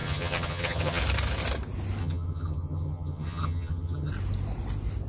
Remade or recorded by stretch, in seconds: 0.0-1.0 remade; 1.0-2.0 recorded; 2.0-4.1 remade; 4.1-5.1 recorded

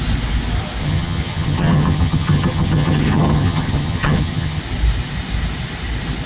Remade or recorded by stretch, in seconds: 0.0-0.8 recorded; 0.8-4.6 remade; 4.6-6.3 recorded

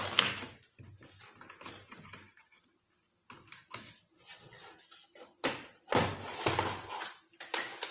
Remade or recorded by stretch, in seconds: 0.0-7.9 recorded

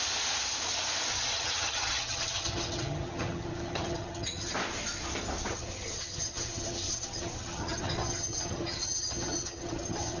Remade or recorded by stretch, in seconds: 0.0-1.1 recorded; 1.1-4.5 remade; 4.5-5.5 recorded; 5.5-10.2 remade